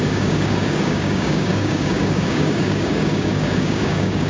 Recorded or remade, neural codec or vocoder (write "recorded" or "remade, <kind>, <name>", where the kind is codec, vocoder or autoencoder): remade, codec, DAC